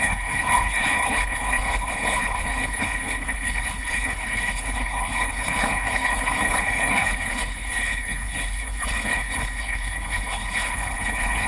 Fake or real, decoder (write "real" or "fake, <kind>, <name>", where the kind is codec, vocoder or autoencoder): fake, codec, HILCodec